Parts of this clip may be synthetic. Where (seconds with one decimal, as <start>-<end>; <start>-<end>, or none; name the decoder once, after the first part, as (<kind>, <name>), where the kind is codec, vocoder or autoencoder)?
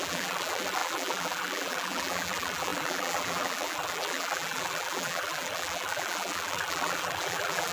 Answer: 0.0-7.7 (vocoder, BigVGAN v2)